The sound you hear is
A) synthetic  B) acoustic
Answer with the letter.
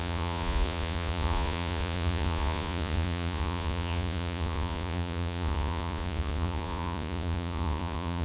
A